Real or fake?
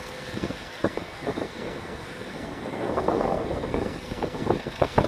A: fake